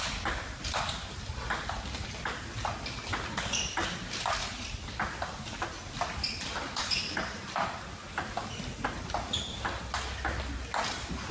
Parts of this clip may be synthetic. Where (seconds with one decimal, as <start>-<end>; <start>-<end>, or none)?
none